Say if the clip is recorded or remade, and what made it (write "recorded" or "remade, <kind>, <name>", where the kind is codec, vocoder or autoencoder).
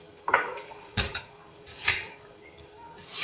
remade, codec, DAC